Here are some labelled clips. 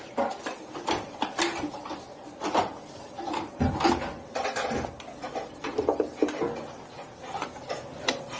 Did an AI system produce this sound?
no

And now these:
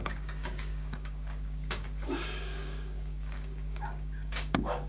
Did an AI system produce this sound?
yes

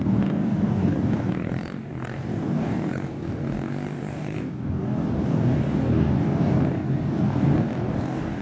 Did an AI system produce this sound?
yes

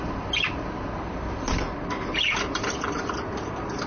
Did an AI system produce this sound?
no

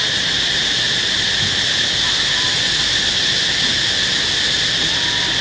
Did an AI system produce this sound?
no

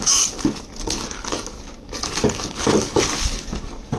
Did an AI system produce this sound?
yes